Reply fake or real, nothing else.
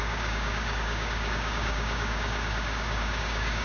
fake